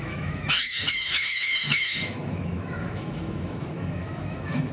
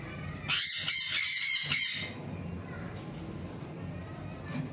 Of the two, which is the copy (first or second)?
first